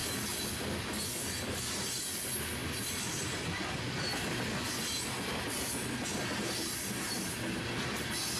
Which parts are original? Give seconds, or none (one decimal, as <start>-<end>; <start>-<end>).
0.0-8.4